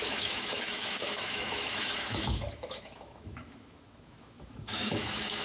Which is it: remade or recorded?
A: remade